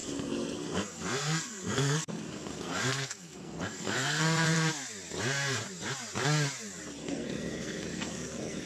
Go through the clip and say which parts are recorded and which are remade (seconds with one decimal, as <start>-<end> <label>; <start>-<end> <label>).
0.0-4.7 remade; 4.7-7.0 recorded; 7.0-8.7 remade